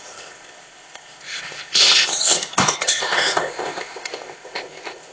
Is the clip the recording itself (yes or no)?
no